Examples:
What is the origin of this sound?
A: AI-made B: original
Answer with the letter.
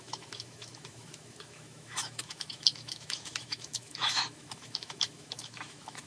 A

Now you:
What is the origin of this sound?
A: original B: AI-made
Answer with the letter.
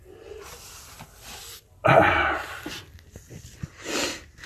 A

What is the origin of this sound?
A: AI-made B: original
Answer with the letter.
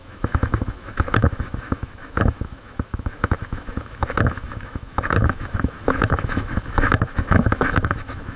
A